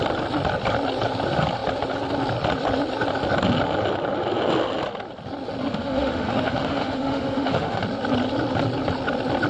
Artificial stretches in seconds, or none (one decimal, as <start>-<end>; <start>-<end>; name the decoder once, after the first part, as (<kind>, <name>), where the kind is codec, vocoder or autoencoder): 5.7-7.8 (autoencoder, DAC-VAE)